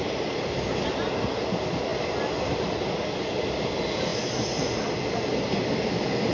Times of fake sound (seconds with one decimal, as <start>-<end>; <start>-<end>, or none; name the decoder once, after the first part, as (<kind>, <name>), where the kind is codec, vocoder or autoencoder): none